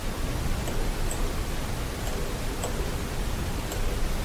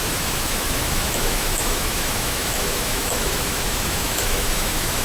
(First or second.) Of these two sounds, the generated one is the second